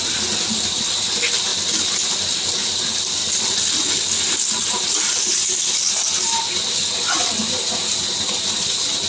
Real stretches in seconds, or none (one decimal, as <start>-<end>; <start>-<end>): 0.0-9.1

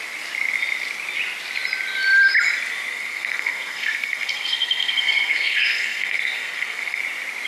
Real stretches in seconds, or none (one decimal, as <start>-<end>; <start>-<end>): 0.0-2.9; 7.0-7.5

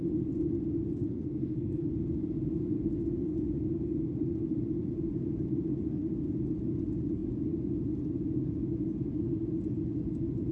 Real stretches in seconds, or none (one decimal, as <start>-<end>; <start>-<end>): 0.0-1.1; 1.9-10.5